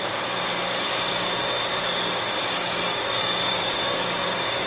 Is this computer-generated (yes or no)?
yes